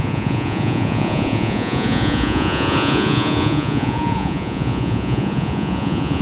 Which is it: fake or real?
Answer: fake